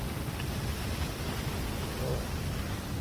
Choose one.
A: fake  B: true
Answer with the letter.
B